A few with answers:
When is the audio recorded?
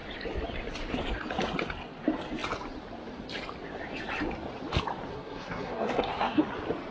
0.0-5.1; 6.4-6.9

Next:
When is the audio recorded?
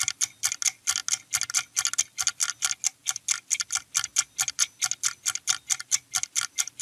0.0-6.8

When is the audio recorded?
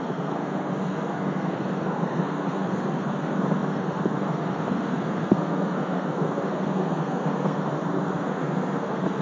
none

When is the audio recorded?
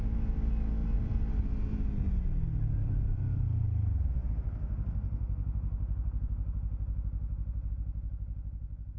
0.0-9.0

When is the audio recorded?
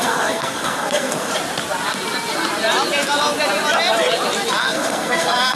1.3-4.6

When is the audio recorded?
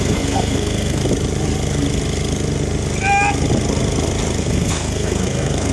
1.0-4.4